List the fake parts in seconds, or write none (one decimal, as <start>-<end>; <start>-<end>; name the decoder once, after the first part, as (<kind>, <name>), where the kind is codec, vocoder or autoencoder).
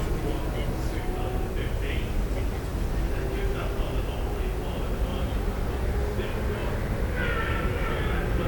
5.1-5.7 (vocoder, BigVGAN v2)